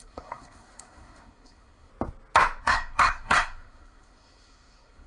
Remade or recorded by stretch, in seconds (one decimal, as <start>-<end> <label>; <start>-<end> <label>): 0.0-1.9 remade; 1.9-2.6 recorded; 2.6-5.1 remade